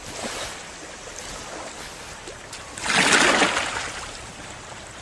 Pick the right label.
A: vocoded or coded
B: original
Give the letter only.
B